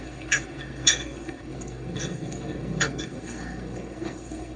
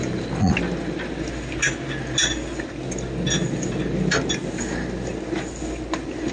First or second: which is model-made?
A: first